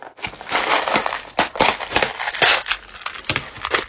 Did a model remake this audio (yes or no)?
no